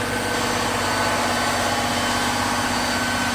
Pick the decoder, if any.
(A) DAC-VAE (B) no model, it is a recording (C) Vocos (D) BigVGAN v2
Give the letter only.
B